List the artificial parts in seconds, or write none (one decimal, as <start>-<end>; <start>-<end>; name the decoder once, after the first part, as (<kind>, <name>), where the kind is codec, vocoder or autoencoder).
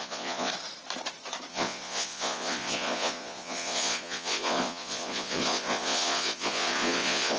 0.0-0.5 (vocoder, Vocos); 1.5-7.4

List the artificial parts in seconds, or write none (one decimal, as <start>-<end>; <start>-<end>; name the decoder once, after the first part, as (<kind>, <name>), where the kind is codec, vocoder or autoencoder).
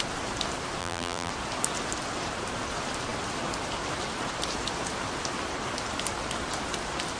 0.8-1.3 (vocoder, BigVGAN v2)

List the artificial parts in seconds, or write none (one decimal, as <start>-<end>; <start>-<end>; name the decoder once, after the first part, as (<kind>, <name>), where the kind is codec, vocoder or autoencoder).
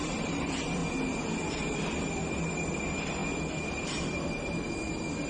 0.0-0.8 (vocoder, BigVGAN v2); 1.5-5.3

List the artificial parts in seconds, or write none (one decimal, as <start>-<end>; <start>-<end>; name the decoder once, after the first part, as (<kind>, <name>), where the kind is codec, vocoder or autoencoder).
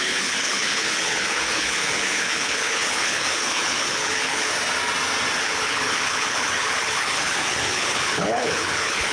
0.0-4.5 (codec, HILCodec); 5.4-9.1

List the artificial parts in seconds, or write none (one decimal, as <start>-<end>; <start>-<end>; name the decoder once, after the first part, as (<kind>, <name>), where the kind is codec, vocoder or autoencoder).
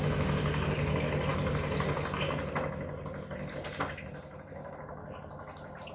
none